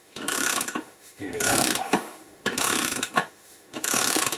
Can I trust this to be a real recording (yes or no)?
no